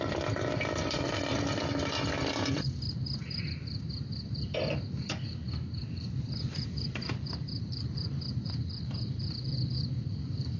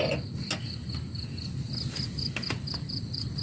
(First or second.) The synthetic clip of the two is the first